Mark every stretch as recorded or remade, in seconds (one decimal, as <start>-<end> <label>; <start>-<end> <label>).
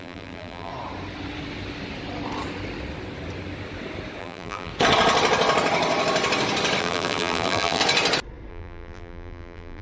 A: 0.0-0.7 remade; 0.7-4.2 recorded; 4.2-4.7 remade; 4.7-6.8 recorded; 6.8-7.8 remade; 7.8-8.5 recorded; 8.5-9.8 remade